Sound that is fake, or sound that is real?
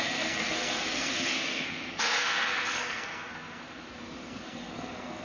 fake